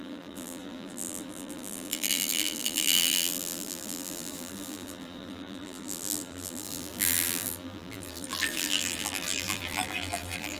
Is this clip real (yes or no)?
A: no